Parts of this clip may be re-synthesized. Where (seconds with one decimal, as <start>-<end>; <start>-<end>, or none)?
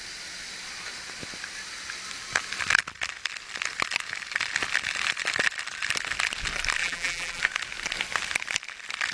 6.8-7.4